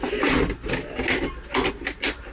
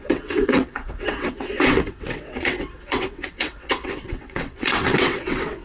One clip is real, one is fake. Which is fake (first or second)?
second